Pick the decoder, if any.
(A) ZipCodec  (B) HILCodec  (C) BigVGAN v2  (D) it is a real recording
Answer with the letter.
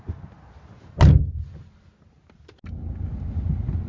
D